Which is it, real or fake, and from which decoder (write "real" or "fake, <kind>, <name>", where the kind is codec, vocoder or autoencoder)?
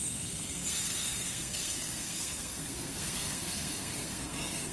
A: fake, codec, SNAC